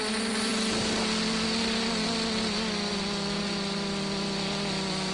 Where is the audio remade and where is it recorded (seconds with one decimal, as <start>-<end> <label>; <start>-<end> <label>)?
0.0-5.1 recorded